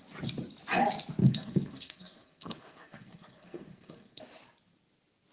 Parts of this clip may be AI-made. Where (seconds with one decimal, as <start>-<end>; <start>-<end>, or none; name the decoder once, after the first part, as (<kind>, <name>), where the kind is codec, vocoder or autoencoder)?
1.2-4.2 (codec, SNAC)